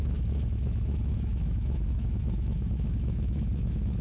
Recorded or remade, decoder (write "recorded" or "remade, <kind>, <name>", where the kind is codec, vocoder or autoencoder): remade, autoencoder, DAC-VAE